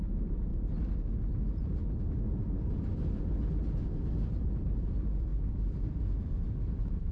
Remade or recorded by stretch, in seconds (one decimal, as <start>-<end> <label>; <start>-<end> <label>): 0.0-0.5 remade; 0.5-2.6 recorded; 2.6-7.1 remade